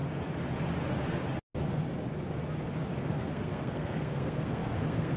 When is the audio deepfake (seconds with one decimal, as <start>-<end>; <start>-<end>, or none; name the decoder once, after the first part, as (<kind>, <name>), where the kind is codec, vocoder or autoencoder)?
3.1-5.2 (codec, SNAC)